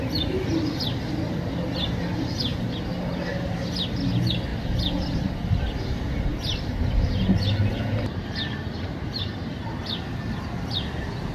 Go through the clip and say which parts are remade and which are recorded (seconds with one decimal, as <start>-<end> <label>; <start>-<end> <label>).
0.0-6.3 recorded; 6.3-9.8 remade; 9.8-11.3 recorded